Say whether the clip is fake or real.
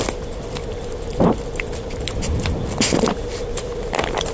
real